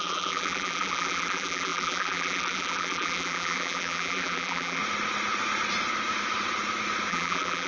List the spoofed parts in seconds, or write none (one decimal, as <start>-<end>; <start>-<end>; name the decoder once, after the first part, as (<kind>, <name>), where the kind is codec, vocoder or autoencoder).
0.0-4.8 (vocoder, BigVGAN v2); 7.1-7.7